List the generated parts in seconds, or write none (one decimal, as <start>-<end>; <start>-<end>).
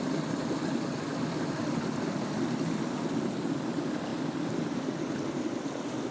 none